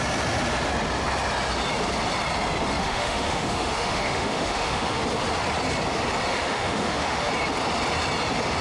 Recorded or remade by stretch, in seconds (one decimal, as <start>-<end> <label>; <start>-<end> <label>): 0.0-2.8 recorded; 2.8-5.0 remade; 5.0-6.3 recorded; 6.3-7.3 remade; 7.3-8.6 recorded

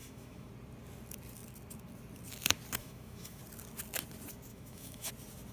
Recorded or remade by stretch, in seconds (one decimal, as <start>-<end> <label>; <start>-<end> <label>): 0.0-0.5 remade; 0.5-2.8 recorded; 2.8-3.4 remade; 3.4-4.5 recorded; 4.5-5.1 remade; 5.1-5.5 recorded

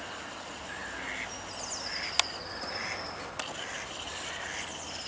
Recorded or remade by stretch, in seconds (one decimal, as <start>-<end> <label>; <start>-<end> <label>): 0.0-5.1 recorded

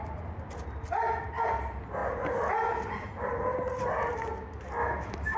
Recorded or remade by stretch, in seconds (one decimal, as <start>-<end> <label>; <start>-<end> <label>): 0.0-4.8 recorded; 4.8-5.4 remade

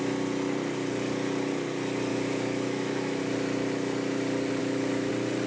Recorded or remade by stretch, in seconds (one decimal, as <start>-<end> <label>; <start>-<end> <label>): 0.0-2.1 recorded; 2.1-3.2 remade; 3.2-4.6 recorded; 4.6-5.1 remade; 5.1-5.5 recorded

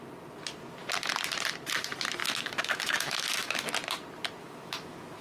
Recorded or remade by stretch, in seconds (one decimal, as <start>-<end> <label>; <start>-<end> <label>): 0.0-2.2 recorded; 2.2-3.7 remade; 3.7-4.4 recorded; 4.4-5.2 remade

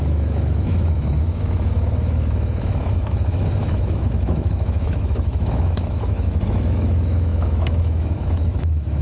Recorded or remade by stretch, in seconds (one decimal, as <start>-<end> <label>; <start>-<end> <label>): 0.0-9.0 remade

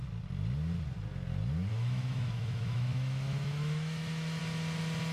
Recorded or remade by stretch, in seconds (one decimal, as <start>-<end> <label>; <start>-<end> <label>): 0.0-1.7 recorded; 1.7-4.4 remade; 4.4-5.1 recorded